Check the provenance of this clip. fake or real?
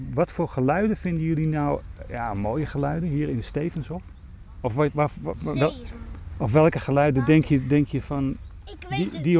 real